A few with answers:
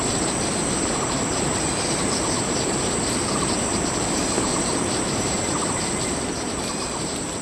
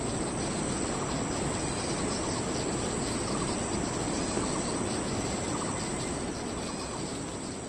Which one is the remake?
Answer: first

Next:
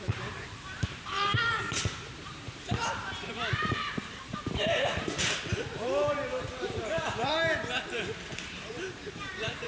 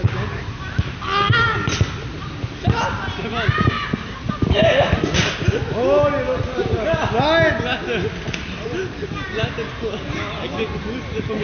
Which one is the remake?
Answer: first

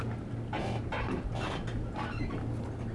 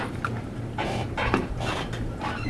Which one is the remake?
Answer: second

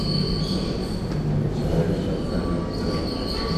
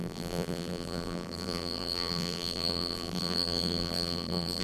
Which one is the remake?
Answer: second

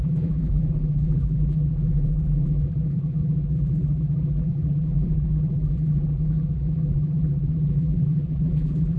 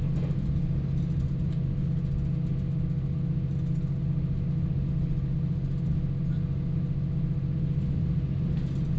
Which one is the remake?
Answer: first